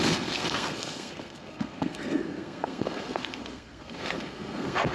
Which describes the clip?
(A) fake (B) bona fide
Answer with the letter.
A